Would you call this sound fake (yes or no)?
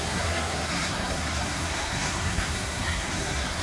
yes